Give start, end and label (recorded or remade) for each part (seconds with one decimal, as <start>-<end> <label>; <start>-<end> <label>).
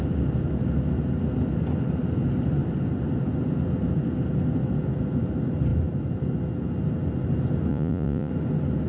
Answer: 0.0-7.7 recorded; 7.7-8.3 remade; 8.3-8.9 recorded